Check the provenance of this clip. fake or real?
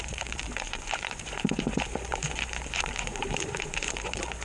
fake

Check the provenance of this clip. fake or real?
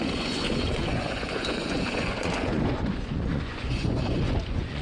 fake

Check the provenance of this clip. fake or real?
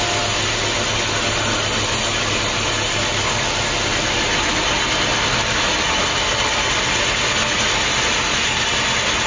real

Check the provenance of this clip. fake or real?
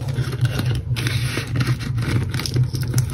real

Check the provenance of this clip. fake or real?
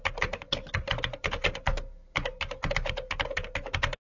real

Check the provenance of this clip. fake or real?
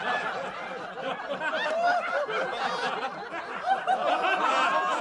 real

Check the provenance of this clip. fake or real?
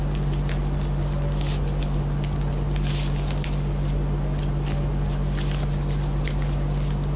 real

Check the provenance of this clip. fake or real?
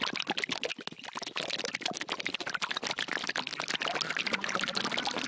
real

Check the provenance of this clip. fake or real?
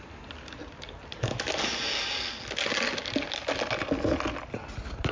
real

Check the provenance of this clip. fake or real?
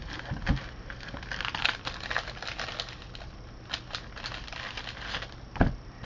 real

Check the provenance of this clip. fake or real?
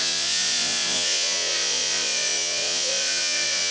fake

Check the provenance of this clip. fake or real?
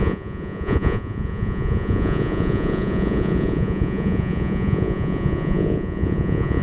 fake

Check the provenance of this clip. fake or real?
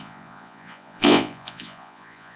fake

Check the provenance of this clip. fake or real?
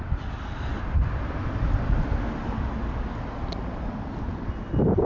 real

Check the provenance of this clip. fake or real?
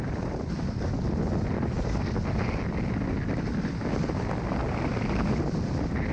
real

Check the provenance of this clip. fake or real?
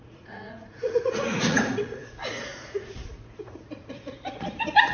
fake